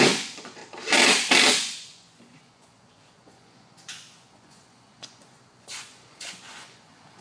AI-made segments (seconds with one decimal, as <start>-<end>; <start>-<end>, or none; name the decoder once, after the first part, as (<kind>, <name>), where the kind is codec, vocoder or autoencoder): 0.0-0.6 (vocoder, Vocos); 1.5-7.2